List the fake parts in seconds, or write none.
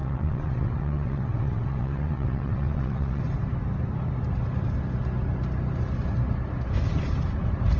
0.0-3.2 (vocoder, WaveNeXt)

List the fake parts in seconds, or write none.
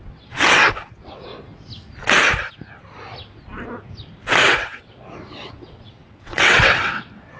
0.0-1.3 (vocoder, WaveNeXt); 4.5-7.4